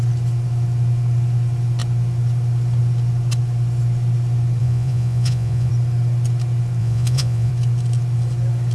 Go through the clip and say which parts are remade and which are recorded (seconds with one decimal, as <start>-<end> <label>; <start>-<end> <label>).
0.0-4.6 recorded; 4.6-5.7 remade; 5.7-6.8 recorded; 6.8-7.5 remade; 7.5-8.7 recorded